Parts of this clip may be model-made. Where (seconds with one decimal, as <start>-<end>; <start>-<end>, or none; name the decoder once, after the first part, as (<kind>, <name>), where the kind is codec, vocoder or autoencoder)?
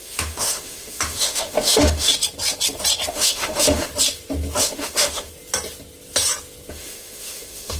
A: 0.0-2.1 (autoencoder, DAC-VAE); 3.1-3.9; 4.6-5.3; 6.7-7.8